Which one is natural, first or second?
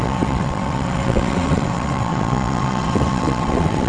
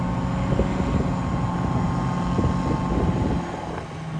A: second